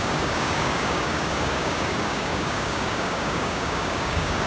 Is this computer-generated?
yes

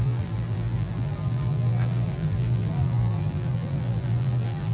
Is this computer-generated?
yes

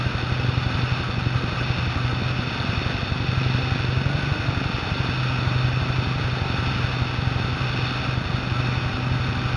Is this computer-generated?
no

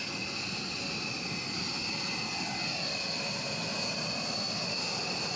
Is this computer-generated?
no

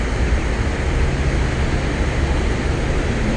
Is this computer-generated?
no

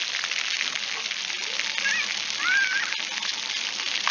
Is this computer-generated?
no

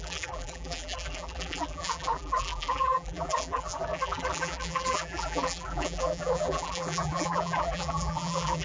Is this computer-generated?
yes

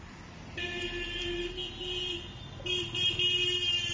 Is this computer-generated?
no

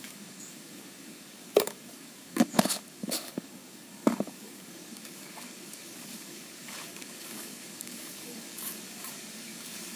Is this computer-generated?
yes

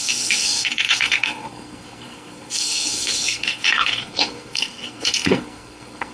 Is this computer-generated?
yes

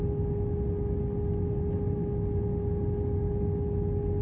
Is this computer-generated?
no